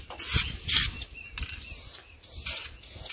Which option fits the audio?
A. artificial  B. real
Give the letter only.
B